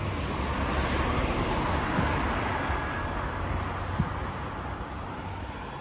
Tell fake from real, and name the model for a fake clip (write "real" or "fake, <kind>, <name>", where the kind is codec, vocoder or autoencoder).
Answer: real